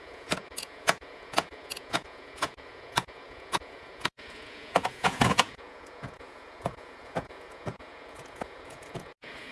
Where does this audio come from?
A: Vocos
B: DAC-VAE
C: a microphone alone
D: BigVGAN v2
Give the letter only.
A